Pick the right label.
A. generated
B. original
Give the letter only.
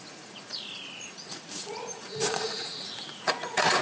A